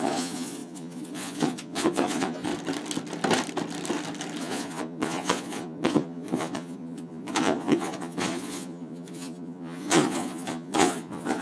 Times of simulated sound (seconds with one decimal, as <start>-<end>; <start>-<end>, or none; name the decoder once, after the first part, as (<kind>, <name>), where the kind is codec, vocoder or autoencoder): 0.0-2.5 (vocoder, Vocos); 4.4-11.4